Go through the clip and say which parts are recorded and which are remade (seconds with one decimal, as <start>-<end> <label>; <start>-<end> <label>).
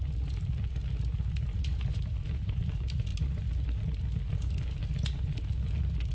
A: 0.0-1.7 recorded; 1.7-2.6 remade; 2.6-6.1 recorded